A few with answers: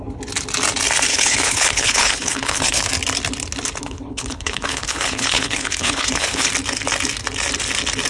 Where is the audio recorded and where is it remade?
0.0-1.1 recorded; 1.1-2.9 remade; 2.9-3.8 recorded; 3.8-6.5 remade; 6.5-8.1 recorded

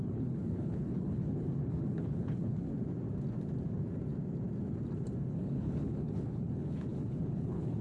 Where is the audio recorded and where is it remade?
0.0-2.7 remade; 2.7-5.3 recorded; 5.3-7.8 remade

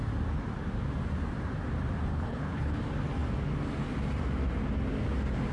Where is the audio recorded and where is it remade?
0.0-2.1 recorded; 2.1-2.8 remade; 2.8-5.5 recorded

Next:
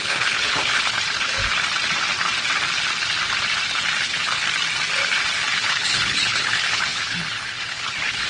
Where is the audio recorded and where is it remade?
0.0-1.4 remade; 1.4-4.0 recorded; 4.0-4.4 remade; 4.4-5.5 recorded; 5.5-8.3 remade

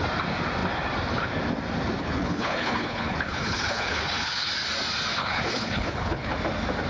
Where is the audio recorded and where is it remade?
0.0-2.0 recorded; 2.0-4.5 remade; 4.5-5.2 recorded; 5.2-6.3 remade; 6.3-6.9 recorded

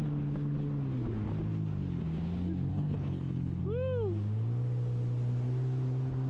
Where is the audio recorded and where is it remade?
0.0-2.7 recorded; 2.7-3.6 remade; 3.6-6.3 recorded

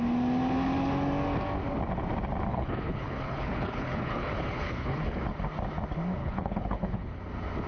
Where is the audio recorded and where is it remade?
0.0-2.5 recorded; 2.5-5.2 remade; 5.2-6.2 recorded; 6.2-7.2 remade; 7.2-7.7 recorded

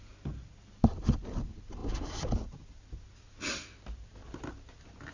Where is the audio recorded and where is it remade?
0.0-5.1 recorded